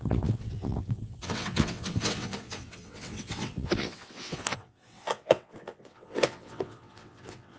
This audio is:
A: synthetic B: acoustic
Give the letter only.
A